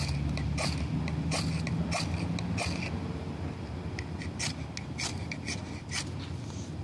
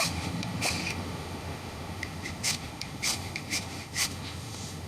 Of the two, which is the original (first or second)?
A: first